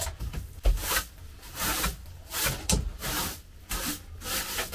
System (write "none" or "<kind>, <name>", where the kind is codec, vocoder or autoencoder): none